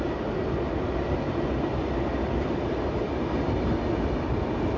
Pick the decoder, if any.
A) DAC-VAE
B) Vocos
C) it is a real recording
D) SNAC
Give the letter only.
C